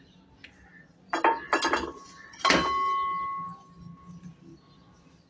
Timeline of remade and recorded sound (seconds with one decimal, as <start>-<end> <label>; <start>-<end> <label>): 0.0-5.3 recorded